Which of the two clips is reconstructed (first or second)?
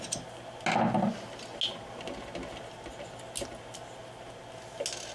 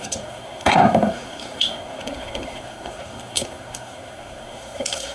second